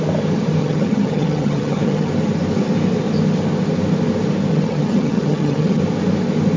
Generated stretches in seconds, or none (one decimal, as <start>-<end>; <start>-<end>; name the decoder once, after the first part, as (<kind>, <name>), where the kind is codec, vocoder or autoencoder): 0.6-2.1 (vocoder, HiFi-GAN); 4.5-5.8